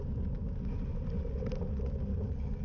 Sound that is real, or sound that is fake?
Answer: real